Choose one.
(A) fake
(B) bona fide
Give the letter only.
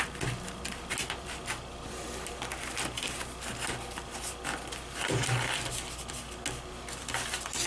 B